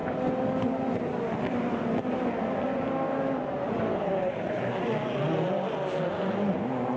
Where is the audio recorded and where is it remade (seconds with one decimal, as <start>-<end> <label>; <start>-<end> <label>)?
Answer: 0.0-3.9 recorded; 3.9-4.7 remade; 4.7-7.0 recorded